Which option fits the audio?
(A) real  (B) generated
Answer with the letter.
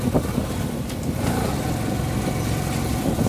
A